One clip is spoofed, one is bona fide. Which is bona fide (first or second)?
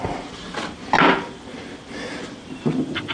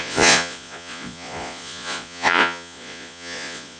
first